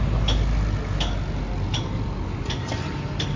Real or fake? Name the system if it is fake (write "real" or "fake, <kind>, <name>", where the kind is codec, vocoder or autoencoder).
real